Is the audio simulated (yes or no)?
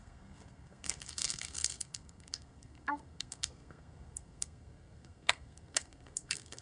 yes